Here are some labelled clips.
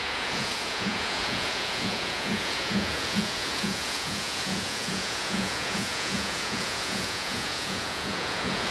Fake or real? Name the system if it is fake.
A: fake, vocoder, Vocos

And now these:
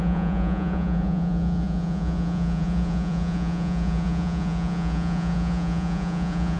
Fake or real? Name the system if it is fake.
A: fake, vocoder, Vocos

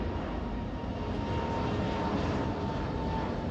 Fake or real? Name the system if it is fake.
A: real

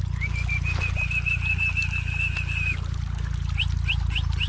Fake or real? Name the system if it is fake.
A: real